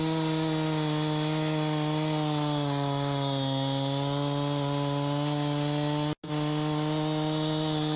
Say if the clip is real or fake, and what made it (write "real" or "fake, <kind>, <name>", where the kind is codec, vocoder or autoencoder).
real